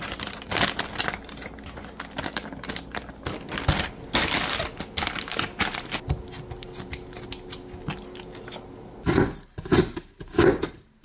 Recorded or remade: recorded